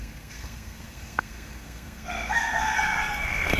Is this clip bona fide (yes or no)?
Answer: no